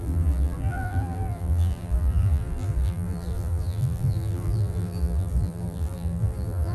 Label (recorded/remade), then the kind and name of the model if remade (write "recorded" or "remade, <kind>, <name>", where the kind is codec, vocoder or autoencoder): remade, vocoder, BigVGAN v2